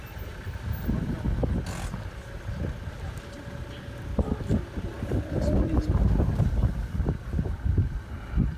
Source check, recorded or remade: recorded